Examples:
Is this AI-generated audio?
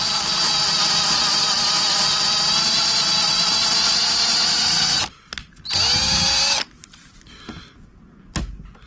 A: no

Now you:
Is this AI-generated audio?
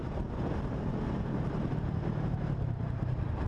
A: yes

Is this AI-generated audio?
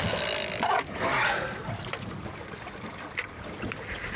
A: no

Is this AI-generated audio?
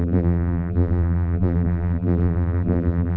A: yes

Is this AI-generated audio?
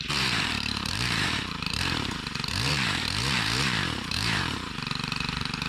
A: yes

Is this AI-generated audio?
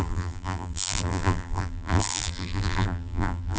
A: yes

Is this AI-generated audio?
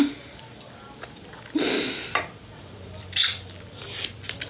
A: yes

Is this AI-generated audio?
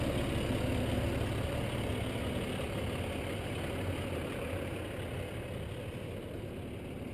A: no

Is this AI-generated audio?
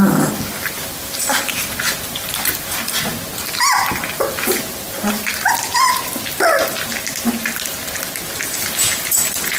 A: no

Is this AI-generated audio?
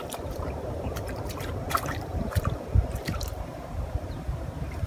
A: yes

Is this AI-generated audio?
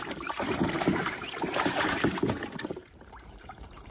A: yes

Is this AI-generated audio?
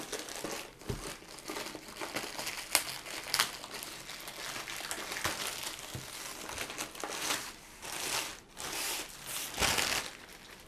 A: no